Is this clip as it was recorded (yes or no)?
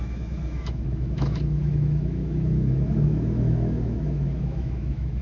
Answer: no